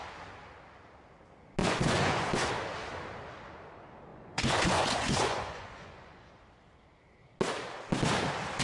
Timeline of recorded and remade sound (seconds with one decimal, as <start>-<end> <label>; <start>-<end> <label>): 0.0-1.6 recorded; 1.6-2.5 remade; 2.5-4.1 recorded; 4.1-6.3 remade; 6.3-8.6 recorded